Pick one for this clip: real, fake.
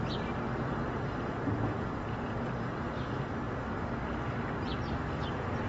real